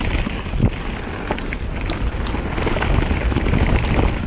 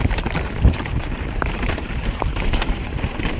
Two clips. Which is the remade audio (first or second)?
second